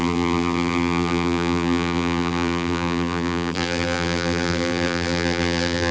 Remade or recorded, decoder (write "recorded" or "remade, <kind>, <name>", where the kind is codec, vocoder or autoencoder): remade, vocoder, BigVGAN v2